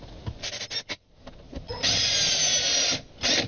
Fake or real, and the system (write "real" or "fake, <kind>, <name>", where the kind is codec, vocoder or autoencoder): real